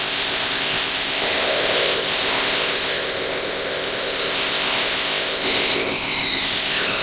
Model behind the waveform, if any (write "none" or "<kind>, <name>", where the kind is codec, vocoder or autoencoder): codec, ZipCodec